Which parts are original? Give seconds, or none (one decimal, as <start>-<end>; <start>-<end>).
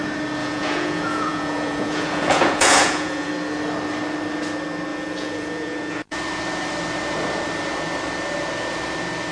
0.0-0.4; 3.3-4.9; 6.2-9.3